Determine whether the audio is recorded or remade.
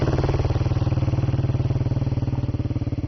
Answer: recorded